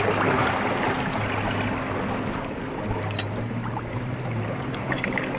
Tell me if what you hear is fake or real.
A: real